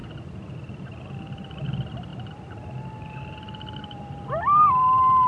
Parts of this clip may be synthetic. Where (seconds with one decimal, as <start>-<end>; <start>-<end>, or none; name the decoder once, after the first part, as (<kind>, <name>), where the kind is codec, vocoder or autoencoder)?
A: 0.0-5.3 (vocoder, BigVGAN v2)